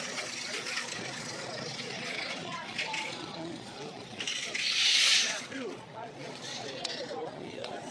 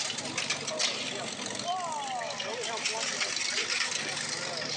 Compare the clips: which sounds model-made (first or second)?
first